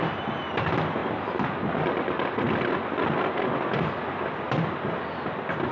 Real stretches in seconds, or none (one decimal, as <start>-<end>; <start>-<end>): 0.0-5.7

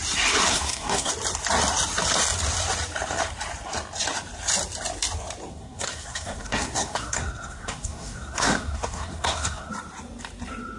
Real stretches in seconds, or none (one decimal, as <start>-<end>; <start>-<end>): 0.0-0.5; 1.1-5.5; 9.7-10.8

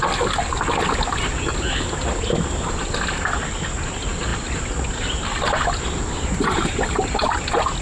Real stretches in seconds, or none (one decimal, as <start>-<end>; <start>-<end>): 0.0-7.8

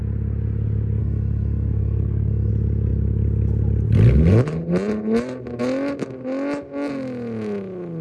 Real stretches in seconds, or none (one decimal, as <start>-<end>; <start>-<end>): 0.0-1.0; 2.5-8.0

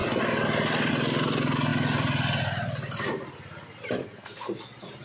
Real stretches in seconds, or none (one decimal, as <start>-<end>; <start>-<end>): 0.0-4.0; 4.6-5.0